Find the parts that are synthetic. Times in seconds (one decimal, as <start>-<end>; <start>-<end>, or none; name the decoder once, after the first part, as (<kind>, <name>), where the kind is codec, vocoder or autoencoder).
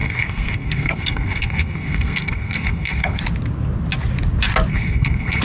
0.0-3.2 (codec, SNAC); 4.7-5.4